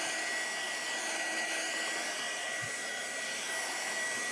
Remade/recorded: recorded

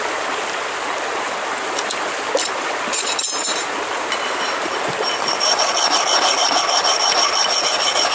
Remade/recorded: recorded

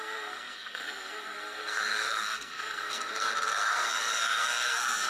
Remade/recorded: remade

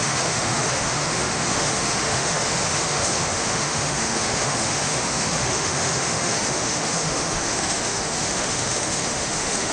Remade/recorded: remade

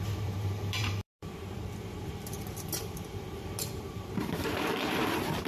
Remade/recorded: remade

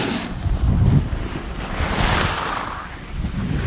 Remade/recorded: recorded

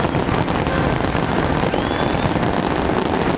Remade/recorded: recorded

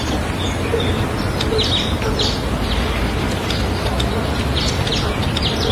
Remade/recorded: recorded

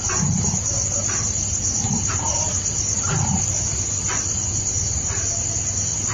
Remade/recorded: recorded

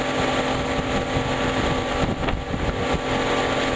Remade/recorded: recorded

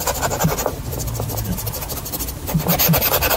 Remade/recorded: recorded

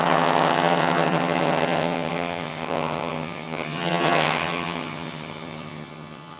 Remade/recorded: remade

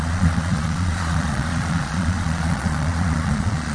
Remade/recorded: remade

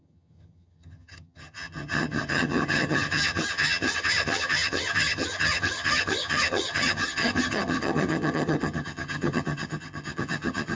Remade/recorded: remade